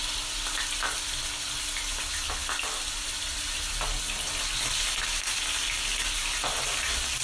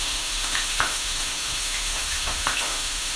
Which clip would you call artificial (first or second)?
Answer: second